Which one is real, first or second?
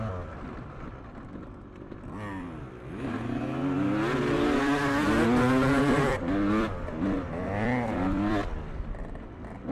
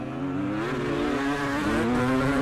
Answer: second